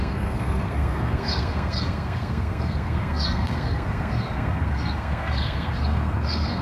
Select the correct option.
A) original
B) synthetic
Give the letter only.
B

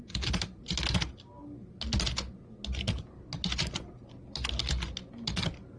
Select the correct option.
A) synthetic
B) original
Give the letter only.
B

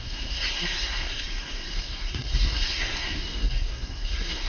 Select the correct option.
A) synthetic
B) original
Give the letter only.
A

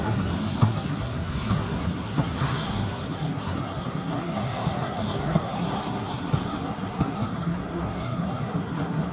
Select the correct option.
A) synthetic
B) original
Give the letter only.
A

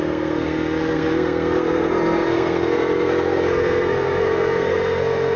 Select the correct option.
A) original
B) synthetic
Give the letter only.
B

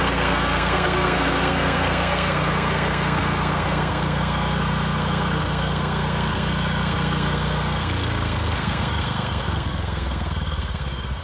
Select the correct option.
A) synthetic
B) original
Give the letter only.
A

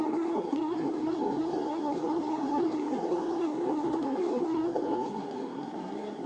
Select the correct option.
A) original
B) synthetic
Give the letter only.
B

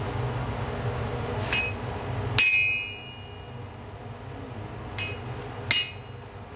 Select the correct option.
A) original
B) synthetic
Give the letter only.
A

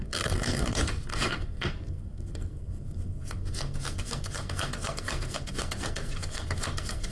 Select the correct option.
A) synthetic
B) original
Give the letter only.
A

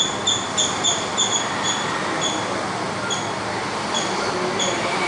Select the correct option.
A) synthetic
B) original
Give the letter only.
B